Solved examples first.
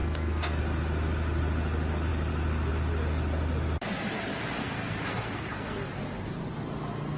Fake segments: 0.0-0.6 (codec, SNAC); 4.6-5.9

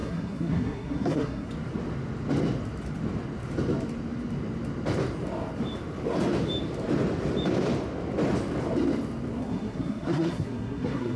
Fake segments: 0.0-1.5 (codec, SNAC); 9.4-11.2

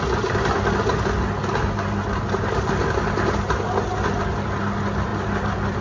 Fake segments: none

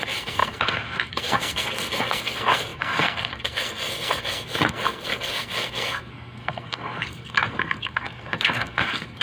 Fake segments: 0.0-9.2 (codec, SNAC)

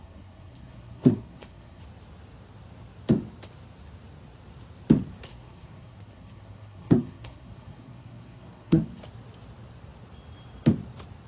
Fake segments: 0.0-1.8 (codec, SNAC); 5.3-9.0

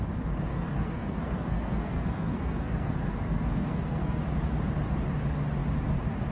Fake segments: 0.5-4.2 (codec, SNAC)

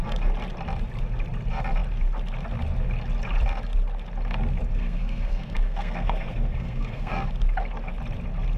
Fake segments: 4.7-7.3 (codec, SNAC)

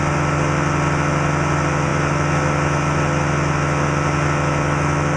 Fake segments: none